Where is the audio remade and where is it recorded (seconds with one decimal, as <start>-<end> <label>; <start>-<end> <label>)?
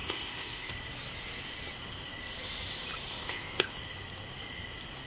0.0-0.7 remade; 0.7-3.1 recorded; 3.1-3.7 remade; 3.7-5.1 recorded